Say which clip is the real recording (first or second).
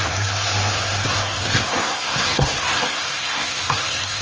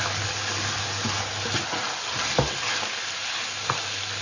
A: second